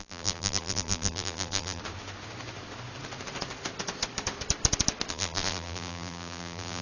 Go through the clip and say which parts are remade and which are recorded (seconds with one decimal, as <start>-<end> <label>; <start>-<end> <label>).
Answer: 0.0-1.8 remade; 1.8-5.1 recorded; 5.1-6.8 remade